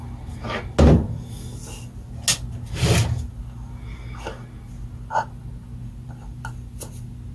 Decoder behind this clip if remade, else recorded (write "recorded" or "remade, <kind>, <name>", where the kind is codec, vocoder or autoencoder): recorded